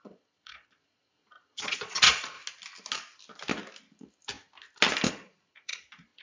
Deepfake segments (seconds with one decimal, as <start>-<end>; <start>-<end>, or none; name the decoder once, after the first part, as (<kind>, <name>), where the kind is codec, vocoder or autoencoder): 0.0-2.4 (vocoder, Vocos); 5.1-6.2

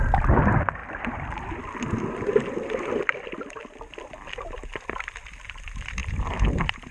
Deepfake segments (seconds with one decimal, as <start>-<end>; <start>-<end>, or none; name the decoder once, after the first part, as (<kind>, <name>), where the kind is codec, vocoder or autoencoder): none

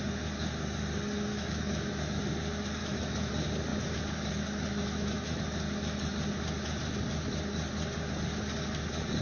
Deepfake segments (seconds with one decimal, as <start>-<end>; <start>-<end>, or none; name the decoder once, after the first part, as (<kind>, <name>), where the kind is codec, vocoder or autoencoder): 1.3-2.2 (autoencoder, DAC-VAE); 2.8-3.3; 4.7-5.4

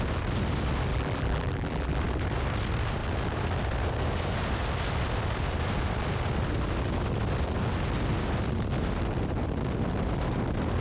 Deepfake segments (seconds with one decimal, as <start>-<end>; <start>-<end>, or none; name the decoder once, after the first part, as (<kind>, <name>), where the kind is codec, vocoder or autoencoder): 0.9-2.0 (vocoder, BigVGAN v2)

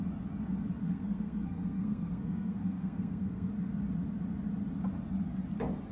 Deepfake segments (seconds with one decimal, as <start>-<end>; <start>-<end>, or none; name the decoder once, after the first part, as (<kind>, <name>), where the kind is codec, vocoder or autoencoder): 0.8-3.5 (codec, SNAC)

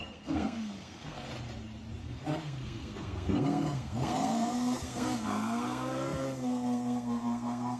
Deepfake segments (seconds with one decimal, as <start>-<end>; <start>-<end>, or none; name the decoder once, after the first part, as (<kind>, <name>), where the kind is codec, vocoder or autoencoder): 0.0-1.3 (codec, SNAC); 2.0-7.8

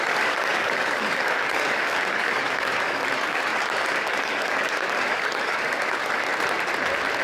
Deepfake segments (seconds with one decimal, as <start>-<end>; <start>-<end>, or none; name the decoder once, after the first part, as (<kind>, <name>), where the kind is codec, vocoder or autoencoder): 0.0-6.3 (codec, DAC)

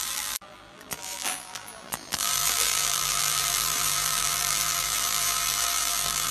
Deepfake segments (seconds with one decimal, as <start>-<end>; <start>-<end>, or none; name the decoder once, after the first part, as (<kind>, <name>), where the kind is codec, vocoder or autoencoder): 0.0-6.3 (vocoder, BigVGAN v2)